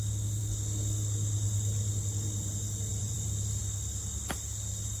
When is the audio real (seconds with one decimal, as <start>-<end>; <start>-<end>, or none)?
0.0-2.9; 3.6-5.0